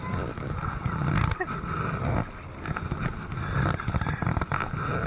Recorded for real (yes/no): yes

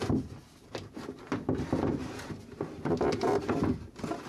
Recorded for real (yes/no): yes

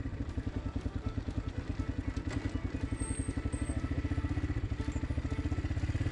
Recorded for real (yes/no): yes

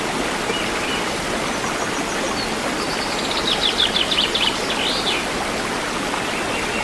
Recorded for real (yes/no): yes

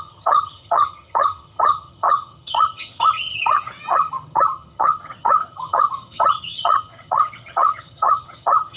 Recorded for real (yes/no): no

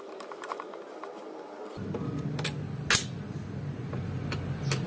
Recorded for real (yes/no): yes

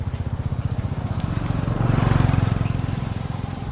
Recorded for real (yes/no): no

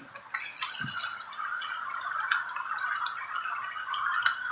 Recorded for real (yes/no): yes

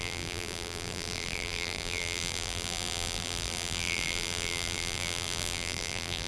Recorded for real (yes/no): no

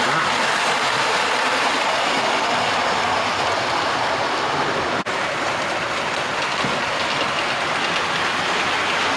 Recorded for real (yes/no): yes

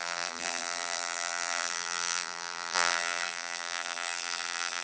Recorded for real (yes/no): no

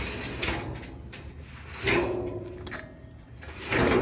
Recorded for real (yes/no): yes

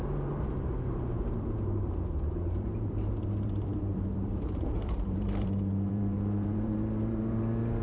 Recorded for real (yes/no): no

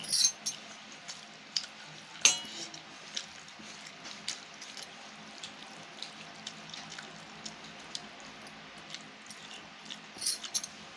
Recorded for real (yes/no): yes